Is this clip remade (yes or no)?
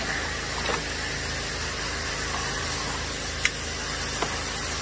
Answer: no